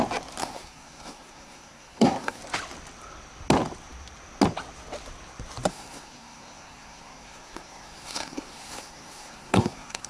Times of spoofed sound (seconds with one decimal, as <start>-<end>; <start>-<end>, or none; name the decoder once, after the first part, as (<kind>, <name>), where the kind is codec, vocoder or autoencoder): 0.4-2.4 (codec, SNAC); 5.7-10.1